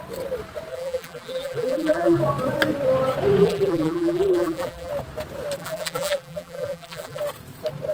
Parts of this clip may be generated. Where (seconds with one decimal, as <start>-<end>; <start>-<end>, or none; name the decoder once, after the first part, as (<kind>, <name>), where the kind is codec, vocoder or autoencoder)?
0.7-2.2 (vocoder, BigVGAN v2); 3.4-4.9; 5.6-7.2